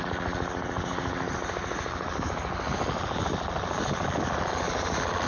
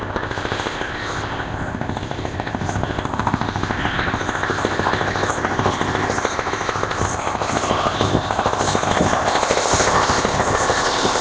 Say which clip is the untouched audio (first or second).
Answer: first